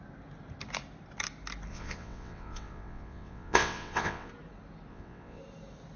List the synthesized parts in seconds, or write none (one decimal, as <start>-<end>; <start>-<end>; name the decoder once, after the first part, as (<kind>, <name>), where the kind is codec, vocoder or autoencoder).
1.7-4.3 (vocoder, WaveNeXt); 4.9-5.4